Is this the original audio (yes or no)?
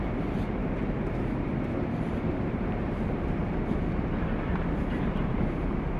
no